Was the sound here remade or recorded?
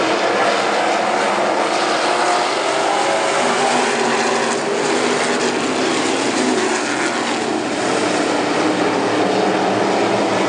recorded